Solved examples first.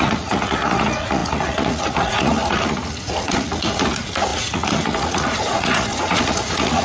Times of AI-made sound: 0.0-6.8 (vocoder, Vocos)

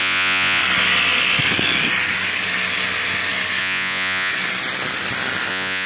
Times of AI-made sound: 0.0-0.6 (vocoder, Vocos); 3.6-4.3; 5.5-5.9